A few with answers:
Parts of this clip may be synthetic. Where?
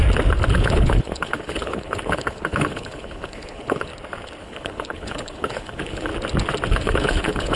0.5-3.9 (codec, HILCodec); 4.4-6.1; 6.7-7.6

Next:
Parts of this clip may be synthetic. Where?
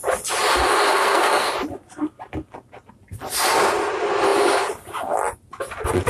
0.9-1.5 (codec, SNAC)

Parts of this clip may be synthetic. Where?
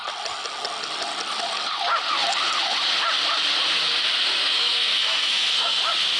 4.5-5.8 (codec, SNAC)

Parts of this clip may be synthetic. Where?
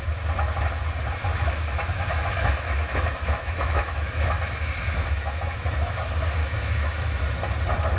1.2-6.0 (autoencoder, DAC-VAE); 6.4-7.2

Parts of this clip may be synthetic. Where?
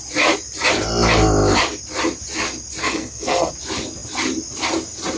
2.8-3.5 (codec, SNAC)